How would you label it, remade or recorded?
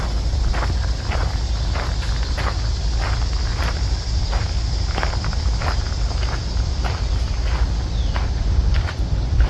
recorded